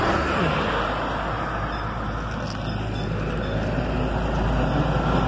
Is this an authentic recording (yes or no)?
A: yes